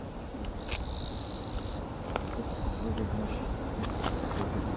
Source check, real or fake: real